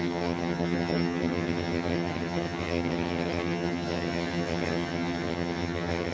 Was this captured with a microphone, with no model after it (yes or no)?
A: no